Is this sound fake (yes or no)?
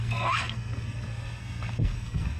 yes